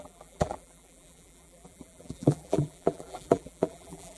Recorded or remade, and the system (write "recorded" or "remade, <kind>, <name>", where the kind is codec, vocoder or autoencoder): remade, vocoder, BigVGAN v2